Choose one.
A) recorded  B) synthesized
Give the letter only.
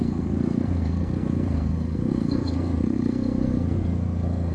B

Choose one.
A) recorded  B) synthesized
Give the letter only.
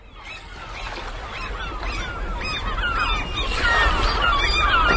A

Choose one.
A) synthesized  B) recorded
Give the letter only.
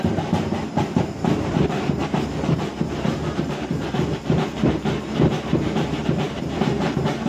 A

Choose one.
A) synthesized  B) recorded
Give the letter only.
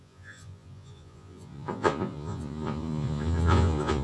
A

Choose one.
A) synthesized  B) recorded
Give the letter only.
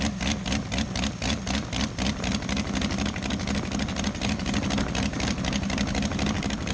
B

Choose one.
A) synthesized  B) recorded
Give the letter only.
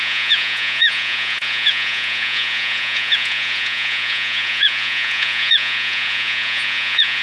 A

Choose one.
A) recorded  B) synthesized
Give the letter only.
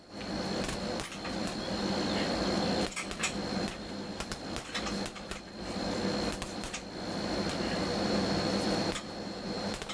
A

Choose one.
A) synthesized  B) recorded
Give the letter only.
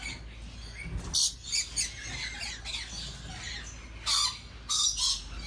B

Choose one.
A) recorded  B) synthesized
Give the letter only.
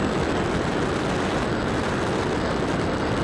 A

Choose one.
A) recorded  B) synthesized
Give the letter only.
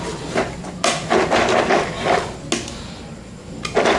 A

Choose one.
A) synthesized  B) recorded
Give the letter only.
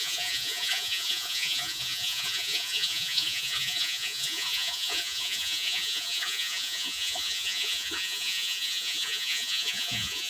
A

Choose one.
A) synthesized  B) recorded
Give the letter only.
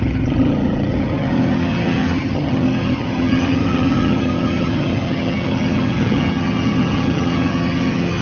A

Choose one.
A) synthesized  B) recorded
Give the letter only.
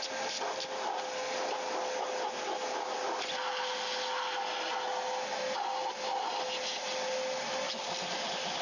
B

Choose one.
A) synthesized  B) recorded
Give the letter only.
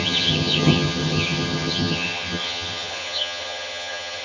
A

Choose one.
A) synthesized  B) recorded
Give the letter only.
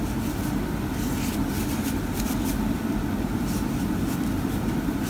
B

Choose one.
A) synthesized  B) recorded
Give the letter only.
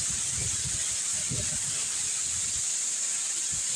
B